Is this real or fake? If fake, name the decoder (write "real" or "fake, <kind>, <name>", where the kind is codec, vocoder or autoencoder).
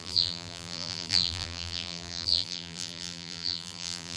fake, vocoder, BigVGAN v2